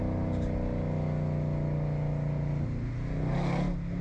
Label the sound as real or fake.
real